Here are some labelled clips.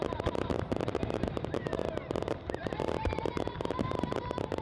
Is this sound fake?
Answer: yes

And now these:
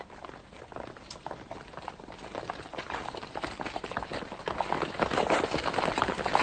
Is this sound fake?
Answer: no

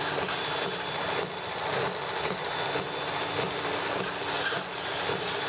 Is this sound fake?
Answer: no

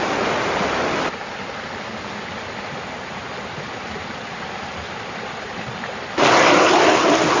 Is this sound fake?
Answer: no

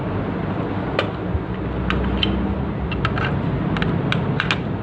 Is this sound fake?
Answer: no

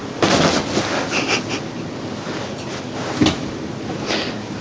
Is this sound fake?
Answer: no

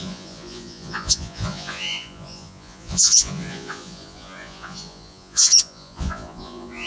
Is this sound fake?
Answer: yes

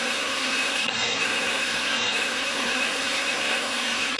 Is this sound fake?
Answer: yes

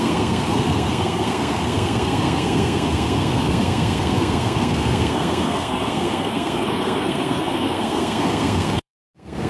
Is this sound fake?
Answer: yes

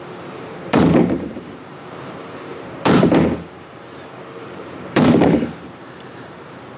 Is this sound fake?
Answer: yes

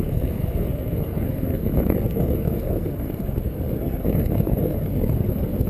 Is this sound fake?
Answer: yes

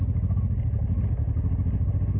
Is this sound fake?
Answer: no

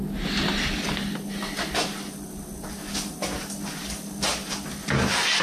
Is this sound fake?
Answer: no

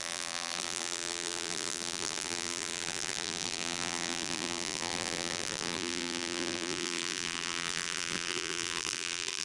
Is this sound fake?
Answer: yes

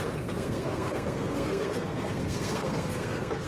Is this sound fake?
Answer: yes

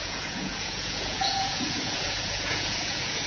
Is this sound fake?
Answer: yes